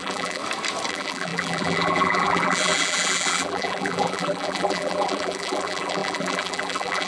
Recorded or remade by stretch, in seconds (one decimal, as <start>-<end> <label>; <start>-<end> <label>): 0.0-0.4 remade; 0.4-0.9 recorded; 0.9-7.1 remade